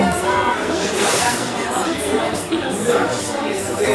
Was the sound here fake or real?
fake